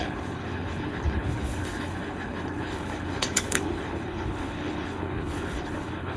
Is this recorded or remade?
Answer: remade